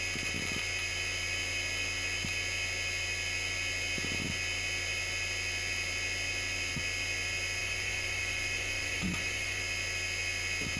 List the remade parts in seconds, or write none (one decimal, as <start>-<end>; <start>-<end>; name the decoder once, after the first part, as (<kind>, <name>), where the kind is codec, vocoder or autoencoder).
7.6-9.6 (vocoder, Vocos)